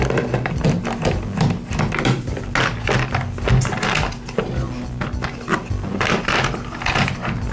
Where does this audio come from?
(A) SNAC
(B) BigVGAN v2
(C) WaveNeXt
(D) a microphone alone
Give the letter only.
D